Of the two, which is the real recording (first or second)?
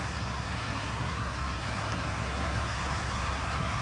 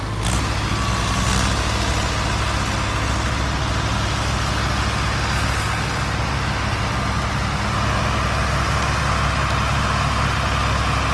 second